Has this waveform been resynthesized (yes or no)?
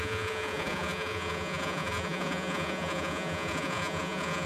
yes